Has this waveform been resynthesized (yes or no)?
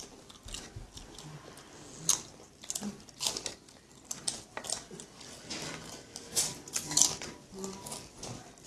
no